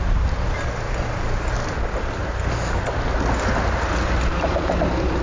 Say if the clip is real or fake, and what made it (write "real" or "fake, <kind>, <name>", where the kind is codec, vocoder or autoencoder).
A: real